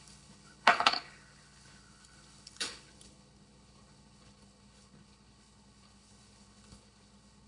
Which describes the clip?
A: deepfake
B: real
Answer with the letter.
A